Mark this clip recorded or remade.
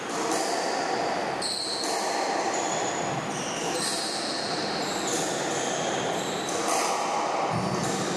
recorded